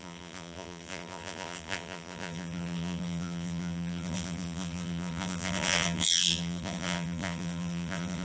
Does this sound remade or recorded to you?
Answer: remade